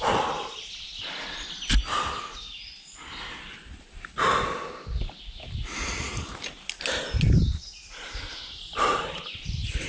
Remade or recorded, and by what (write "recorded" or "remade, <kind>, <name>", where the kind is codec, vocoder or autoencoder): recorded